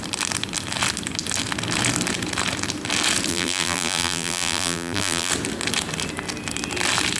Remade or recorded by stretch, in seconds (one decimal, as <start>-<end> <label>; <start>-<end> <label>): 0.0-3.3 recorded; 3.3-5.3 remade; 5.3-7.2 recorded